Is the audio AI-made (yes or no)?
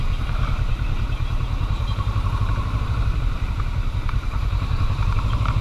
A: yes